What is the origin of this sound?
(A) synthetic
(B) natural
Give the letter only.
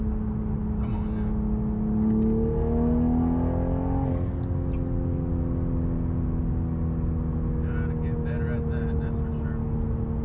B